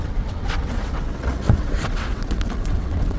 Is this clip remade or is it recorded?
remade